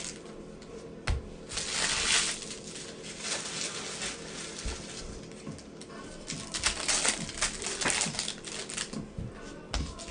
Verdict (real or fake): real